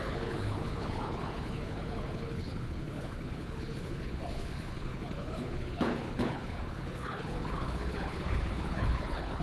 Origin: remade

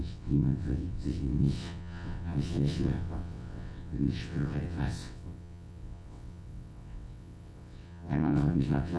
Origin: remade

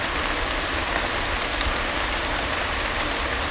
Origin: recorded